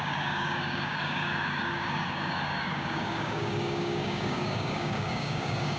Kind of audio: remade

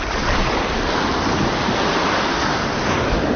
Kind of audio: recorded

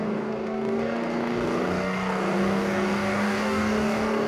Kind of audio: remade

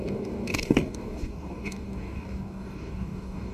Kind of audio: remade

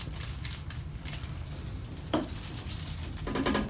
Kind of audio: recorded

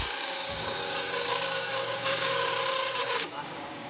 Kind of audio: remade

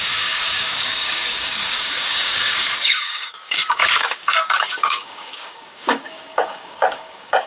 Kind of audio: remade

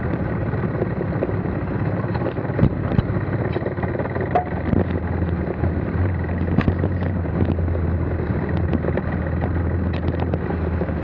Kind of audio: recorded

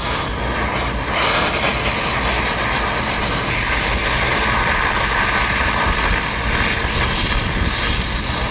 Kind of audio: recorded